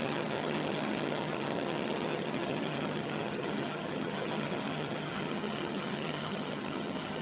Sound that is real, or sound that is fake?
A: fake